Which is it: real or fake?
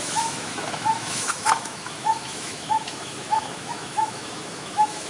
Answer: fake